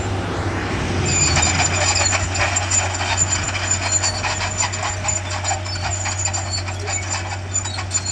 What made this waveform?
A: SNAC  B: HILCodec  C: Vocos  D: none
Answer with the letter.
D